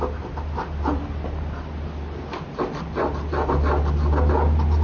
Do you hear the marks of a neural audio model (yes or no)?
no